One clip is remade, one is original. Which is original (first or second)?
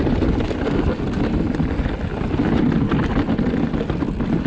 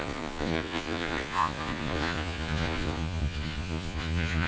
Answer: first